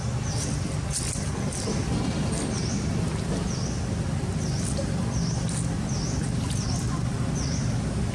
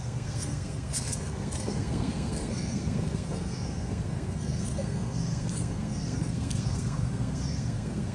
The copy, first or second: second